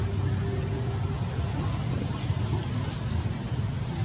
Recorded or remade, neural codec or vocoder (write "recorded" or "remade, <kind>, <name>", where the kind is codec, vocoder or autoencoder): recorded